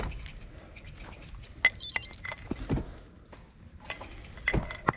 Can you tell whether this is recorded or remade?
recorded